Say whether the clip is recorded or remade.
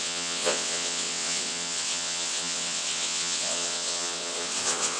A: remade